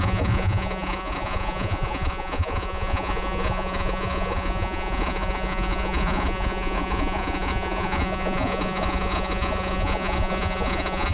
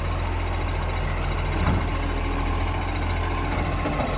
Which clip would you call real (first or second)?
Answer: second